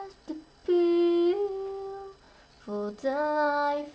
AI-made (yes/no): no